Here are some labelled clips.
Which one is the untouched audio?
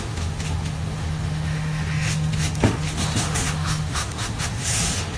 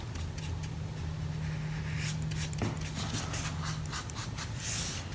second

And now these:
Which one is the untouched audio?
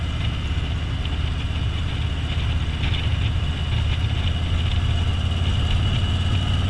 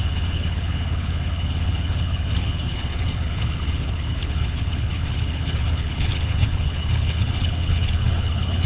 first